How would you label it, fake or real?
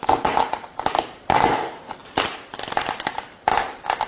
real